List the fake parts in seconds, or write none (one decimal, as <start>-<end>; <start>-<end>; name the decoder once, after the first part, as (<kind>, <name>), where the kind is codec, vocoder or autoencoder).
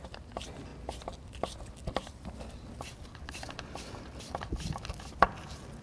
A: none